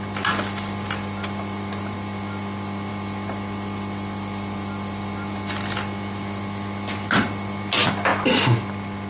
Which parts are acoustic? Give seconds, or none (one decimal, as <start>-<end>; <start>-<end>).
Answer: 0.0-9.1